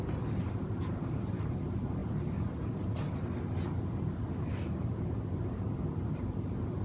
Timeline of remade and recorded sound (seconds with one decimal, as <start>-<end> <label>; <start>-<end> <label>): 0.0-6.8 recorded